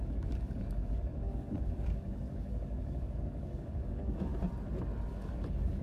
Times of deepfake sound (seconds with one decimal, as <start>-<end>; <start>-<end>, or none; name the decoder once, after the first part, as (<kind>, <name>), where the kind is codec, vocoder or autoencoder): 0.0-4.3 (codec, DAC); 5.1-5.8